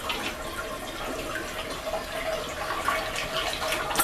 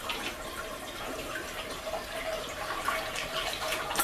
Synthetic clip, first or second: second